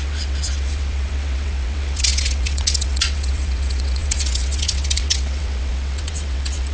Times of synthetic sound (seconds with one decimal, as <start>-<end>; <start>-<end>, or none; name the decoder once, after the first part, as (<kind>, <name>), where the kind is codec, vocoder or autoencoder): 0.0-6.7 (vocoder, WaveNeXt)